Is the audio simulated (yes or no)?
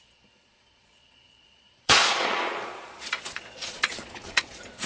yes